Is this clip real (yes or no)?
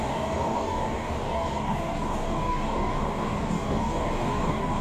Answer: no